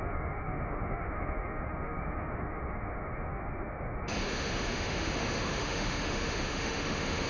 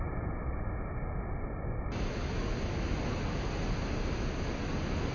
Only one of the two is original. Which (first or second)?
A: second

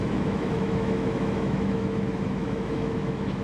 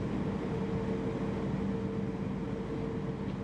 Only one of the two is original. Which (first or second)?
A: second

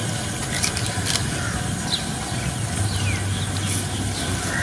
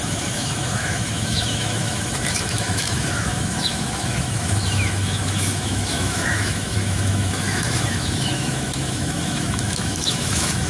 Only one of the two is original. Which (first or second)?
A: first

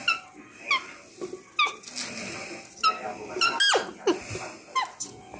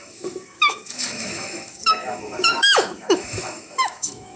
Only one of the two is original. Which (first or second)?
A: first